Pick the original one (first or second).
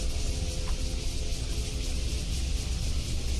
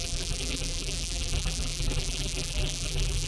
first